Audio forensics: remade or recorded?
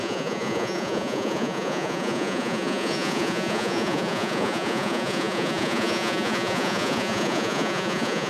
remade